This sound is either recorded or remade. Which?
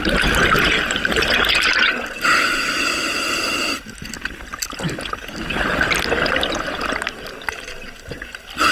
recorded